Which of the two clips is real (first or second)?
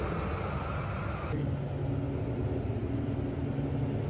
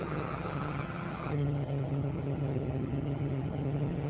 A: first